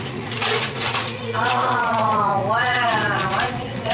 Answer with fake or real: fake